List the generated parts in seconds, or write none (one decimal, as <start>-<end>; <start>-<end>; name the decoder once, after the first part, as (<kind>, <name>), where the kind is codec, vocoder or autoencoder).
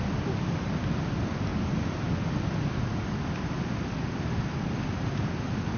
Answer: none